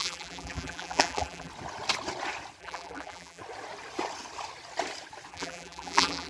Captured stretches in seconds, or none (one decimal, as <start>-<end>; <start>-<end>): 1.5-2.6; 3.4-5.3